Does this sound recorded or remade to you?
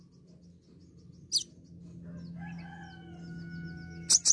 recorded